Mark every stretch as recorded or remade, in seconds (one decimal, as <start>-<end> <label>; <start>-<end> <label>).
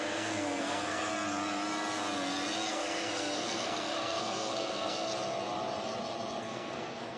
0.0-1.1 remade; 1.1-2.7 recorded; 2.7-5.1 remade; 5.1-6.4 recorded; 6.4-7.2 remade